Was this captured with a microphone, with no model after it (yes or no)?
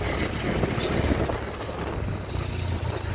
yes